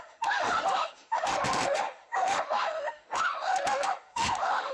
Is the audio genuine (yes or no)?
no